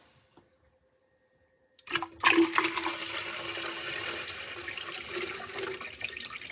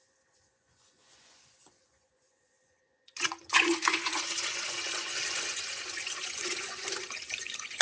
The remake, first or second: second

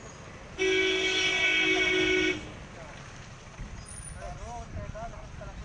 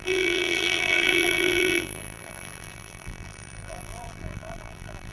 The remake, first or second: second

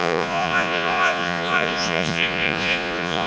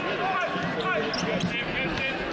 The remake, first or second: first